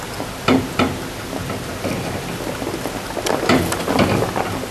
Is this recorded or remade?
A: recorded